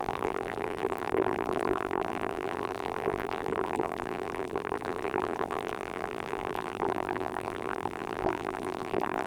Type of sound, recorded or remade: remade